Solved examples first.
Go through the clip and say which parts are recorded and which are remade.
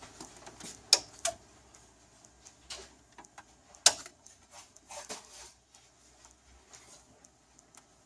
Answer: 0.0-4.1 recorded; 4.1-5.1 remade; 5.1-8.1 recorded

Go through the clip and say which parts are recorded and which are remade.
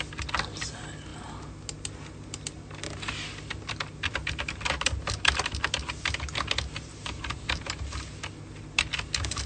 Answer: 0.0-6.9 recorded; 6.9-7.7 remade; 7.7-9.5 recorded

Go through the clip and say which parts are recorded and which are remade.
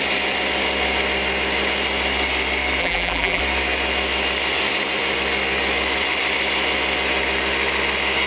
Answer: 0.0-2.8 recorded; 2.8-3.4 remade; 3.4-8.3 recorded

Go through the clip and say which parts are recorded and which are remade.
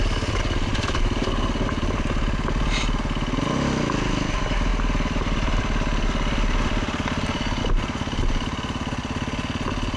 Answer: 0.0-0.7 recorded; 0.7-3.0 remade; 3.0-4.7 recorded; 4.7-7.6 remade; 7.6-10.0 recorded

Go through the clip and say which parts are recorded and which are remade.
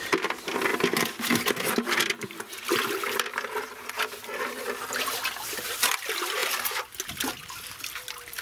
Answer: 0.0-0.7 recorded; 0.7-5.7 remade; 5.7-8.4 recorded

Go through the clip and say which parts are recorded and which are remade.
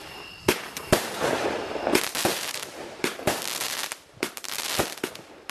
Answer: 0.0-2.3 recorded; 2.3-3.4 remade; 3.4-5.5 recorded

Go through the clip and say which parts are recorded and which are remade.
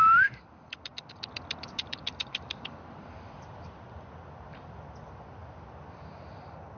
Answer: 0.0-6.8 remade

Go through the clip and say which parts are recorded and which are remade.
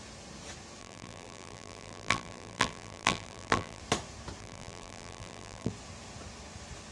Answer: 0.0-0.8 recorded; 0.8-3.8 remade; 3.8-4.4 recorded; 4.4-5.7 remade; 5.7-6.9 recorded